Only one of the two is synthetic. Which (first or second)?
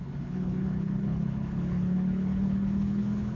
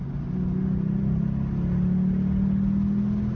first